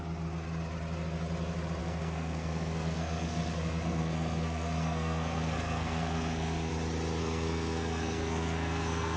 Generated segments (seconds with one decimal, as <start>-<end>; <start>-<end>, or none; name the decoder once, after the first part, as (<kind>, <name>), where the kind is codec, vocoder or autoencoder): 1.8-6.7 (codec, SNAC); 7.2-9.2